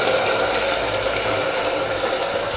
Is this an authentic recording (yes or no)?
yes